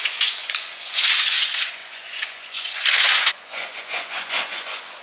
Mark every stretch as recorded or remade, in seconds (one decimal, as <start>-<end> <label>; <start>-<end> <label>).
0.0-5.0 remade